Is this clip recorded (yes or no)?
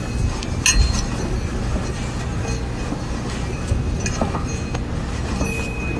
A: yes